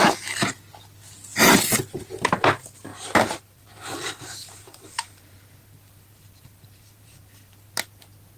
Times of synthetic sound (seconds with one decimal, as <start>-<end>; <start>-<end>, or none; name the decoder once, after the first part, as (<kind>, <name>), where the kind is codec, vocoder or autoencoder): 2.9-7.7 (vocoder, BigVGAN v2)

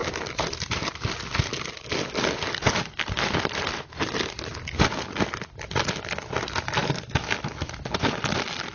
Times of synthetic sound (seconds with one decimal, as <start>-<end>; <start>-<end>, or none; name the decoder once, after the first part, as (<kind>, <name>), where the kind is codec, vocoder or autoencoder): 0.0-1.0 (vocoder, BigVGAN v2); 6.8-7.5

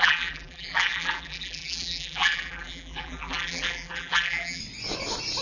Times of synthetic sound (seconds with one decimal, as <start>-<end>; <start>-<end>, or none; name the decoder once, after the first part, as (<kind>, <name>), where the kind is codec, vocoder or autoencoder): 0.0-4.6 (vocoder, BigVGAN v2)